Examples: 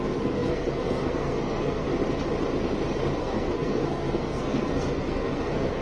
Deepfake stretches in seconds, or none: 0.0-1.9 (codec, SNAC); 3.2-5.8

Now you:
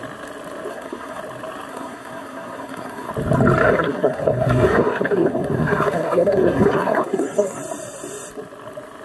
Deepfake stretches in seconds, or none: 0.7-1.2 (codec, SNAC); 1.7-3.1; 3.6-7.6

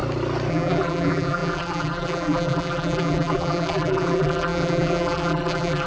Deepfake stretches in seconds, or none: 0.5-5.9 (vocoder, BigVGAN v2)